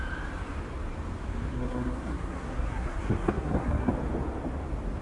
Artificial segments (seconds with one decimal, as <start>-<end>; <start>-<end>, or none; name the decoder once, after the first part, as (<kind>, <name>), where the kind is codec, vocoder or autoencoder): 1.5-3.9 (codec, SNAC)